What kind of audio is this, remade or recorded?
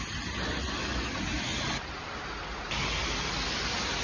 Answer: recorded